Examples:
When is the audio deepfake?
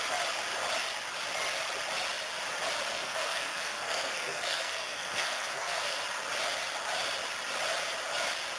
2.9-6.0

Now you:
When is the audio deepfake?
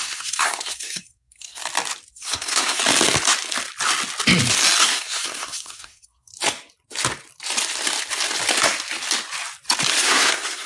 0.0-1.6; 2.1-2.8; 4.8-6.3; 10.0-10.7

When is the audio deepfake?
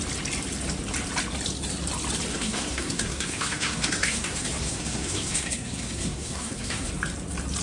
2.3-6.9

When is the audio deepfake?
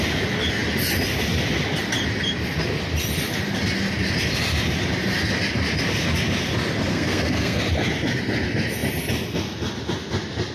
6.9-7.6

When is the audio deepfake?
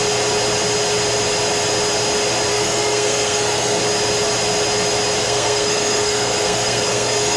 2.5-3.8; 5.2-7.4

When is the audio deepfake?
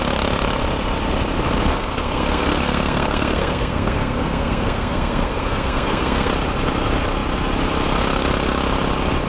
1.7-6.3